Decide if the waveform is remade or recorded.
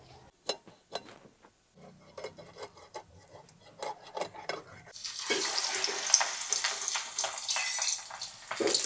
recorded